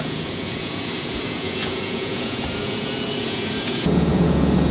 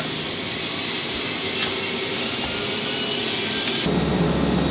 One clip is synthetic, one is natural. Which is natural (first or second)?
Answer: second